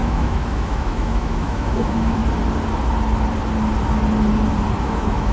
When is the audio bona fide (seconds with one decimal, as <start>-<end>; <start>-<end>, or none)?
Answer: 2.2-4.8